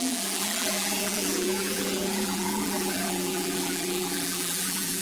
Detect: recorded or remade remade